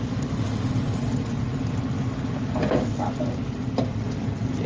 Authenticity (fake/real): real